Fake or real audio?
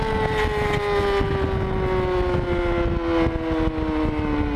real